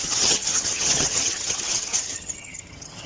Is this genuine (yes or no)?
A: no